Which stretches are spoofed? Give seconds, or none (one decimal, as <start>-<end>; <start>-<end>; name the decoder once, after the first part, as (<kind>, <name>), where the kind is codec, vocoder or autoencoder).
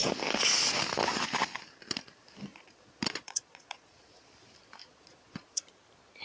2.5-4.3 (vocoder, Vocos); 4.8-5.7